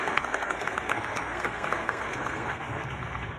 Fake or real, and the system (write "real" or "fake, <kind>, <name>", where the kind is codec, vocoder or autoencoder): fake, codec, SNAC